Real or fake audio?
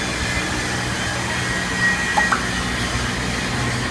real